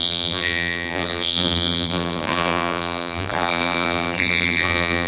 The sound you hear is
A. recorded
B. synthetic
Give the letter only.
B